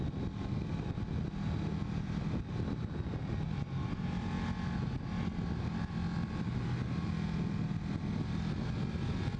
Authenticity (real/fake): real